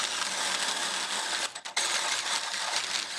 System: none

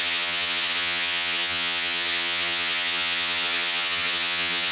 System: vocoder, HiFi-GAN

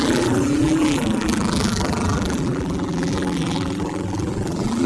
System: vocoder, BigVGAN v2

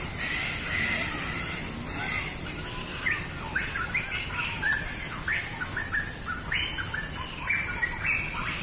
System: none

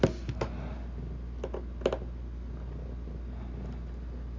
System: none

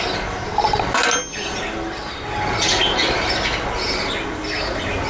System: none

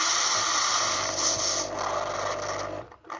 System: none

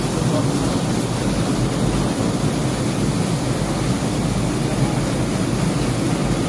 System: none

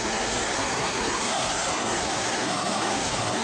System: codec, SNAC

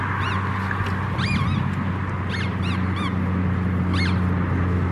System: none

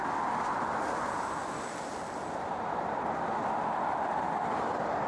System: none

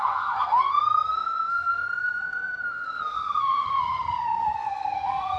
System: codec, SNAC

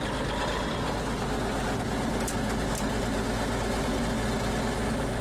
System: none